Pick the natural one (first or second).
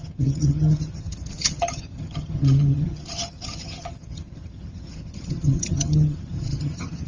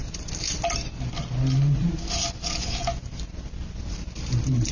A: second